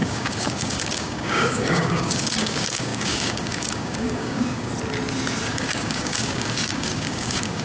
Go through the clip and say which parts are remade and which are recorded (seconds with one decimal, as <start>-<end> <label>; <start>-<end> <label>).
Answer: 0.0-4.7 remade; 4.7-5.5 recorded; 5.5-7.6 remade